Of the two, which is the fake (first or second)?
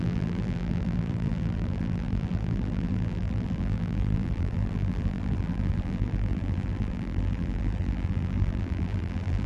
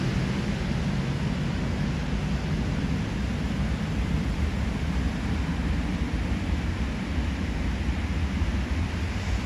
first